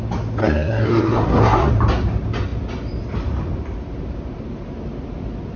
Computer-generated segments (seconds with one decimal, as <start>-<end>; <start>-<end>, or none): 0.4-1.7